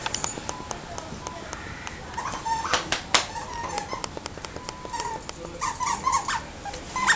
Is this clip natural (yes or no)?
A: yes